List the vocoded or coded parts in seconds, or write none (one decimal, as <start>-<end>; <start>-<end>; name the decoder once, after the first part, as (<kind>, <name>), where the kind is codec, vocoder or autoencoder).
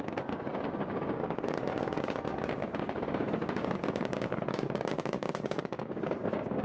0.0-6.6 (codec, DAC)